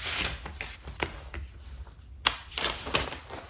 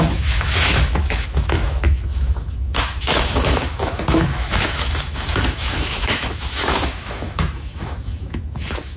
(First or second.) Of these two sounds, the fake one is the second